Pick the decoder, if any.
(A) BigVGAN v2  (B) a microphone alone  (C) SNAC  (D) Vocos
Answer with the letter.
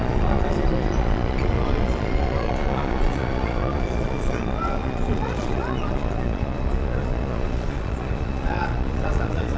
D